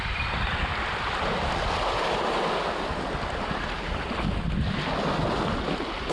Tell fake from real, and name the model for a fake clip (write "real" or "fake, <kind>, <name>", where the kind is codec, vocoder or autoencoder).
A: real